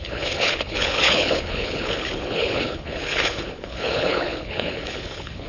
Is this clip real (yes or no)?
no